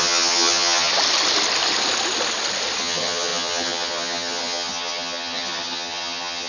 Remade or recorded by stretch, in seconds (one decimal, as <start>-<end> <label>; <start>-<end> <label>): 0.0-0.9 remade; 0.9-2.8 recorded; 2.8-6.5 remade